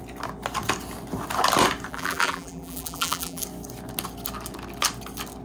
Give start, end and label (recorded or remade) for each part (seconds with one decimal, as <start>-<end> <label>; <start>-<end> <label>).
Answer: 0.0-1.9 recorded; 1.9-3.4 remade; 3.4-5.4 recorded